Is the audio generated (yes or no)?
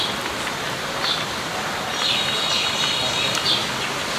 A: no